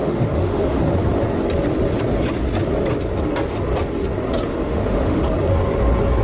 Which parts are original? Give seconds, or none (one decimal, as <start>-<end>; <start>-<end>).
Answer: 0.8-4.5; 5.2-6.2